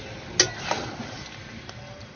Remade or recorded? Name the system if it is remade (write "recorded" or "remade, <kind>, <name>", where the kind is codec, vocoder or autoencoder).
recorded